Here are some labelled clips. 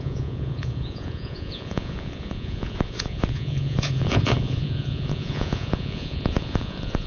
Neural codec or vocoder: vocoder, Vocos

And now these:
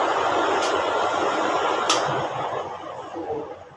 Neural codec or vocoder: vocoder, Vocos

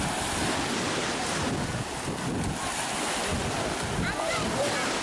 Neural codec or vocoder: none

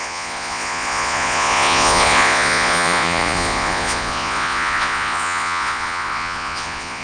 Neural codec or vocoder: vocoder, Vocos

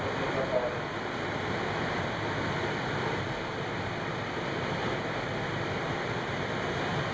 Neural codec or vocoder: none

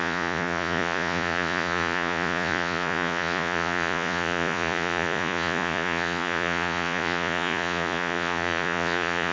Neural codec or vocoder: vocoder, Vocos